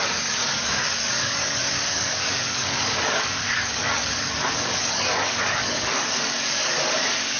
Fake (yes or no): yes